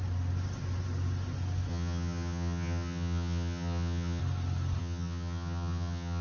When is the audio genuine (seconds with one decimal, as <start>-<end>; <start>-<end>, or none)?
0.0-1.7; 4.2-4.8

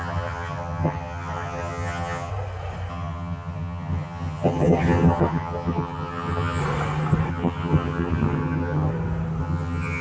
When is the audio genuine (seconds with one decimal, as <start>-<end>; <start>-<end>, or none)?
2.3-2.9; 6.6-7.3; 8.9-9.4